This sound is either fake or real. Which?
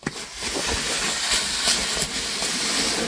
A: real